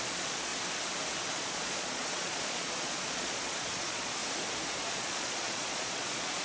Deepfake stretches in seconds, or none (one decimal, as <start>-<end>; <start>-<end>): 0.0-0.5; 1.3-4.2; 4.9-6.4